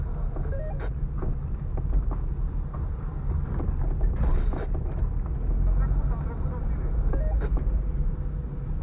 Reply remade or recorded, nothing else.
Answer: recorded